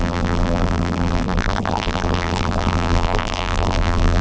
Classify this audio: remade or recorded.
remade